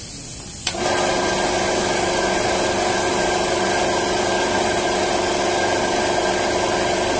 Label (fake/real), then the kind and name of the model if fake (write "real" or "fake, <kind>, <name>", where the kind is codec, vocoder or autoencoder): real